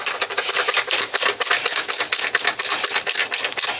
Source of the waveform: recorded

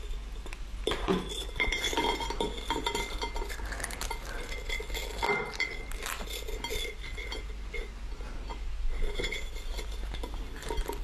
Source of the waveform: recorded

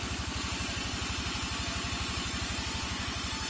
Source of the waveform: recorded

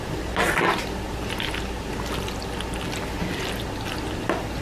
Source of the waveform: recorded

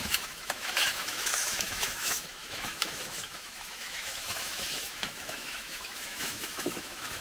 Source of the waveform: remade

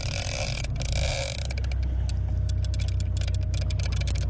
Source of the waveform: recorded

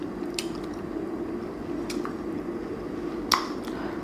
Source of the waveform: recorded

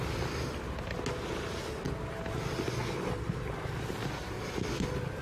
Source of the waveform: recorded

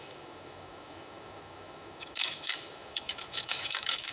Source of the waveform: remade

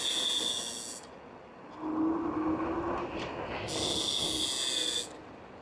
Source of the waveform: recorded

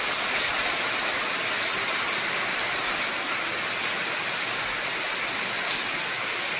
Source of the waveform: recorded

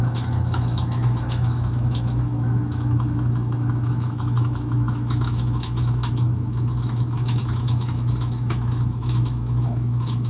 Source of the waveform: remade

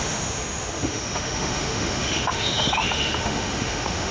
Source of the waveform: remade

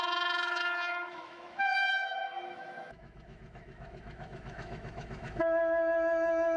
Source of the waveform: remade